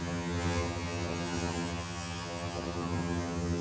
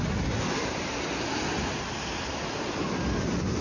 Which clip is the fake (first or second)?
first